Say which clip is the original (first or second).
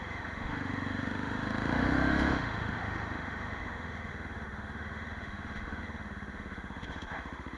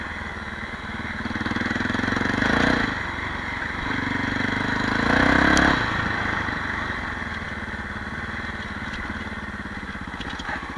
second